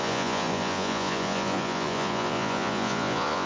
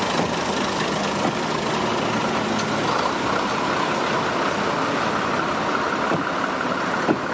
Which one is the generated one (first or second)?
first